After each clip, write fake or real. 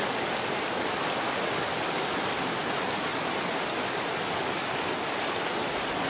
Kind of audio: real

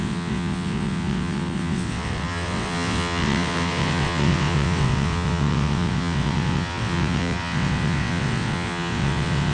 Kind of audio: fake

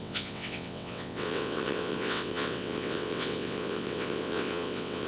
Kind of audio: fake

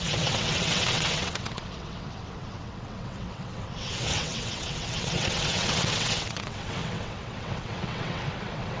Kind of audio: fake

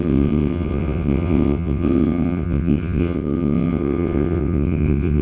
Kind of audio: fake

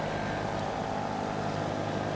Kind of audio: real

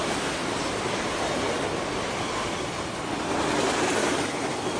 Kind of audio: real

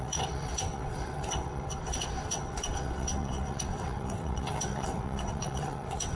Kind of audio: fake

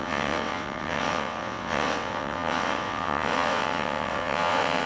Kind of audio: fake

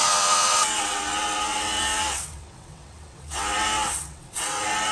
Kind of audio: fake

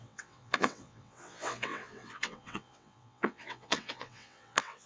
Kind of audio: fake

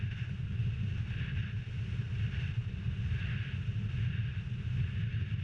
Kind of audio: real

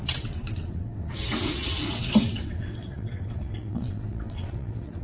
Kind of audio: fake